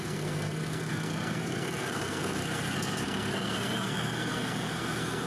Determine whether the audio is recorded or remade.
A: remade